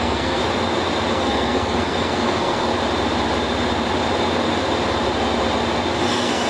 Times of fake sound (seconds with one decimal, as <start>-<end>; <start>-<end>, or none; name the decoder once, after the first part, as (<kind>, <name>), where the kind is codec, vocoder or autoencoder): 0.0-0.4 (codec, SNAC); 1.1-2.7; 6.1-6.5